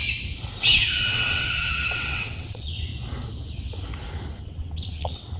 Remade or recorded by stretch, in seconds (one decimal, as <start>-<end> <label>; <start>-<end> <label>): 0.0-0.6 recorded; 0.6-2.9 remade; 2.9-4.4 recorded; 4.4-5.4 remade